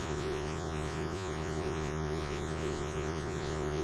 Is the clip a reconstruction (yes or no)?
yes